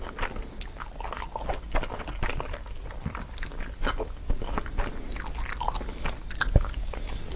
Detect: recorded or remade recorded